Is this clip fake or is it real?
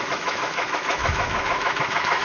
fake